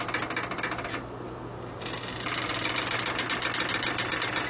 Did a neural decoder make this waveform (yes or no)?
no